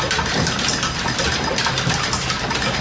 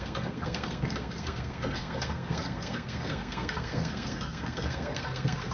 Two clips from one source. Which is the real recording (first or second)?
first